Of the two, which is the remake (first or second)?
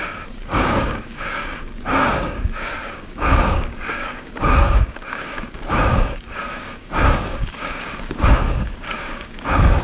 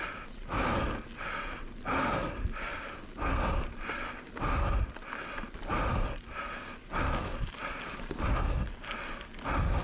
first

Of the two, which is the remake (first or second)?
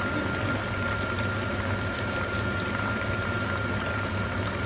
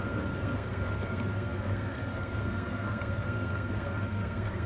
second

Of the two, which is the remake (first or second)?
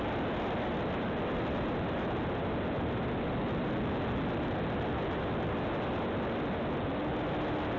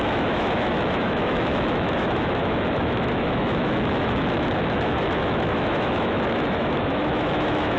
second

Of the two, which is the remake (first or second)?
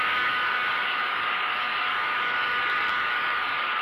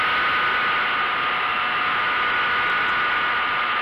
first